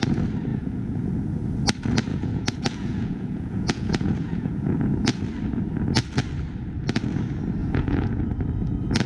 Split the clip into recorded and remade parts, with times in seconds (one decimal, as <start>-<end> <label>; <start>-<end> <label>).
0.0-0.5 recorded; 0.5-1.1 remade; 1.1-2.1 recorded; 2.1-5.2 remade; 5.2-7.6 recorded; 7.6-8.2 remade; 8.2-9.1 recorded